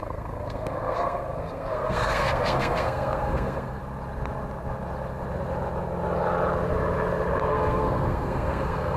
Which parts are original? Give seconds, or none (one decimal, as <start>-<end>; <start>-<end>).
3.8-7.5